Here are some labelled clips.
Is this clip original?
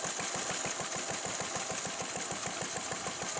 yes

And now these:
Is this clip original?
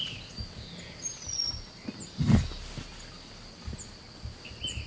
yes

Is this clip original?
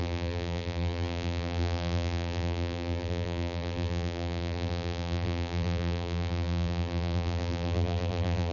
no